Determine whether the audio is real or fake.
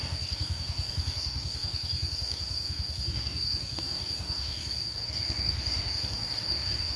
fake